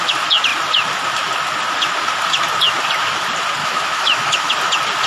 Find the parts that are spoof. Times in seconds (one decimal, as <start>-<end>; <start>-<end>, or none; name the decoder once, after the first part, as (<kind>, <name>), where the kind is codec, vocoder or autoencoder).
3.6-4.5 (autoencoder, DAC-VAE)